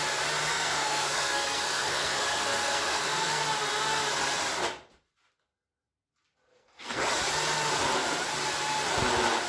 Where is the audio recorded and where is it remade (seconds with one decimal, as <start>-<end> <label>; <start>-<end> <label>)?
0.0-0.5 recorded; 0.5-3.4 remade; 3.4-6.5 recorded; 6.5-7.0 remade; 7.0-9.5 recorded